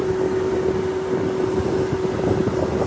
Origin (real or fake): real